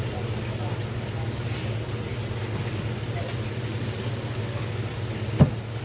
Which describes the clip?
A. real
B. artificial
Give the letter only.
A